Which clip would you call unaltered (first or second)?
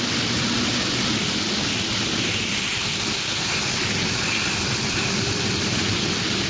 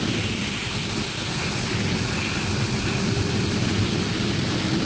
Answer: second